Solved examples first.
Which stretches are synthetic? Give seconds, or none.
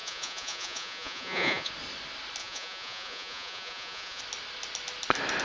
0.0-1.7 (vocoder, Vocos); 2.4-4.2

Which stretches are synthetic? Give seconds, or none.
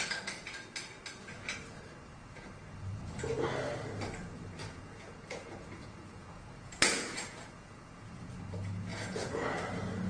4.6-8.4 (vocoder, Vocos); 8.9-9.5